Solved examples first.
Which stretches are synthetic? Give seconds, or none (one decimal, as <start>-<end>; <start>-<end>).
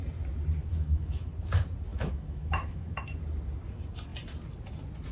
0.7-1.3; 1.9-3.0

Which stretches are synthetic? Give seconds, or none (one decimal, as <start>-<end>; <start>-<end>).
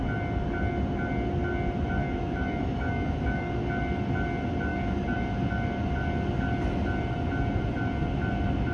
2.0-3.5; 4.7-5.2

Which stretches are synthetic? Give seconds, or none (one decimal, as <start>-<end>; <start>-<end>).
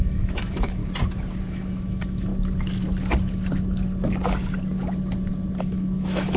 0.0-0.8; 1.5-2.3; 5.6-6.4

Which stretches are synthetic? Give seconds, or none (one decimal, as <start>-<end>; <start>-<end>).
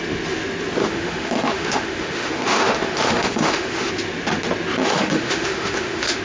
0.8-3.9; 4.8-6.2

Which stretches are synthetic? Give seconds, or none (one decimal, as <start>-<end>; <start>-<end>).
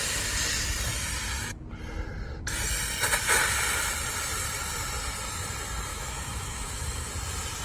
5.9-7.1